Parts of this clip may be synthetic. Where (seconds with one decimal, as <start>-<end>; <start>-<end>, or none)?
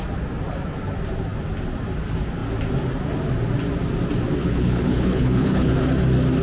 4.4-5.7